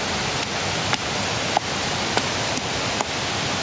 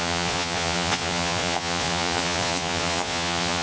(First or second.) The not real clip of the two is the second